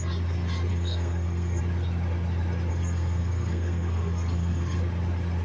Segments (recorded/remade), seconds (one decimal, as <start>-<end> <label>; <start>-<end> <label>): 0.0-0.7 recorded; 0.7-1.6 remade; 1.6-2.7 recorded; 2.7-4.8 remade; 4.8-5.4 recorded